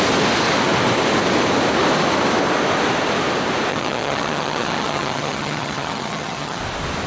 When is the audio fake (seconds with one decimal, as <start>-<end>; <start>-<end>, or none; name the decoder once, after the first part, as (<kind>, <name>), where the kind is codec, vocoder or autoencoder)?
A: 3.7-6.6 (vocoder, HiFi-GAN)